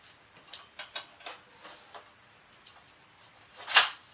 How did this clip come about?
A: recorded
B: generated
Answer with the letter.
A